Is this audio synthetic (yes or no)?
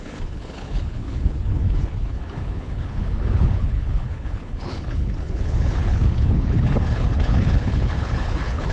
yes